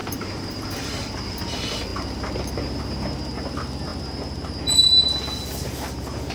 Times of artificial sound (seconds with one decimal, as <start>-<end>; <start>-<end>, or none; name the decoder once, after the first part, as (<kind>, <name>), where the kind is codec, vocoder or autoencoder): 0.0-1.3 (vocoder, BigVGAN v2)